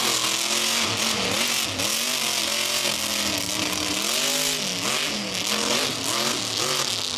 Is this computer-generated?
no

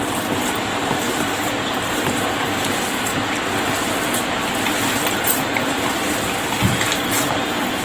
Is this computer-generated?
no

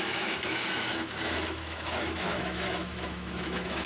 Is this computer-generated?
yes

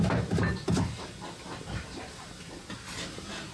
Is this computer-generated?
no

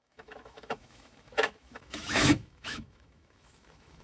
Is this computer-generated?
yes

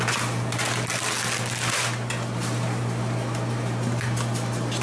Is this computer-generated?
no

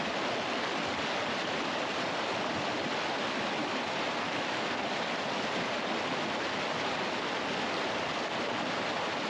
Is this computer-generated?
no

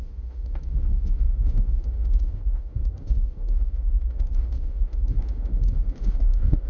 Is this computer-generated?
yes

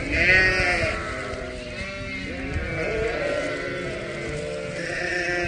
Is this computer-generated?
no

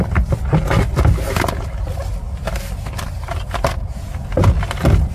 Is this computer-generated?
no